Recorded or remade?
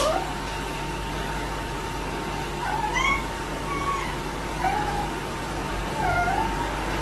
remade